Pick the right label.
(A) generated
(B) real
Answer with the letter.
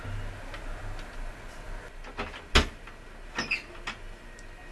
B